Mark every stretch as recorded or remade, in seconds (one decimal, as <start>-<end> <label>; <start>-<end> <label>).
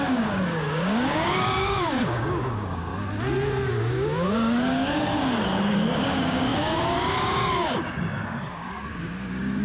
0.0-2.9 remade; 2.9-3.7 recorded; 3.7-9.6 remade